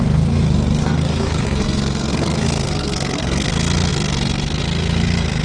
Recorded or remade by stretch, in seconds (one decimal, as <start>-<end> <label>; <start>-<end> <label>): 0.0-0.8 recorded; 0.8-3.5 remade; 3.5-5.4 recorded